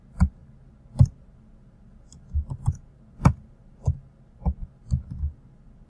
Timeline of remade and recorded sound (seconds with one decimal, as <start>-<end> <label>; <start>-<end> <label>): 0.0-5.9 recorded

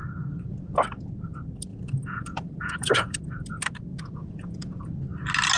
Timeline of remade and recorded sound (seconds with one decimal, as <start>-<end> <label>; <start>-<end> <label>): 0.0-1.7 recorded; 1.7-3.2 remade; 3.2-3.9 recorded; 3.9-4.8 remade; 4.8-5.6 recorded

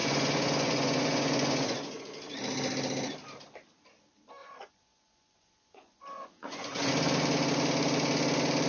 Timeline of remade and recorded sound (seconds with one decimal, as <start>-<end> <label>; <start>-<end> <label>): 0.0-2.0 remade; 2.0-4.4 recorded; 4.4-6.9 remade; 6.9-8.7 recorded

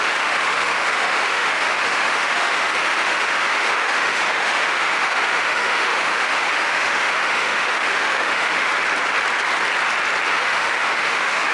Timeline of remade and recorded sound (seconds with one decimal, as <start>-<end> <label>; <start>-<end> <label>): 0.0-8.7 remade; 8.7-10.3 recorded; 10.3-11.5 remade

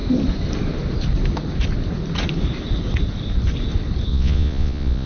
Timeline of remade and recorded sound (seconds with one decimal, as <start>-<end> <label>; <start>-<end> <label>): 0.0-4.1 recorded; 4.1-5.1 remade